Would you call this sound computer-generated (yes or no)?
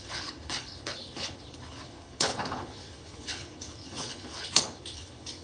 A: yes